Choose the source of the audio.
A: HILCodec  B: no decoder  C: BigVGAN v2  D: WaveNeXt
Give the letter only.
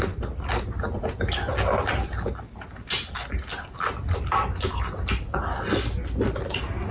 B